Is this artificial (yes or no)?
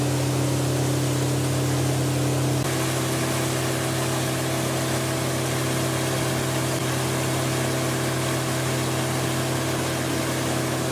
no